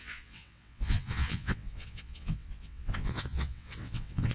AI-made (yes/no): yes